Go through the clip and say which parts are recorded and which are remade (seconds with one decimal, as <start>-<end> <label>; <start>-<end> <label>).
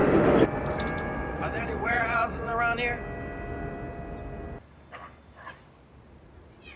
0.0-1.3 recorded; 1.3-2.5 remade; 2.5-6.1 recorded; 6.1-6.8 remade